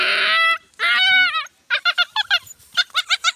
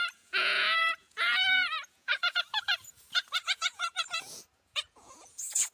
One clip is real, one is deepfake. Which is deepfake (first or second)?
second